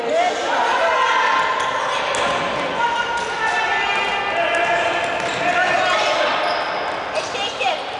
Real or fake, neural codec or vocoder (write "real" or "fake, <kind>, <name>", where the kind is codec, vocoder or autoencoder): real